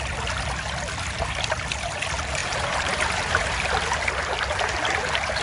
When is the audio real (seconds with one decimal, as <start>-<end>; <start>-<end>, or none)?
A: 0.0-2.4; 3.2-5.4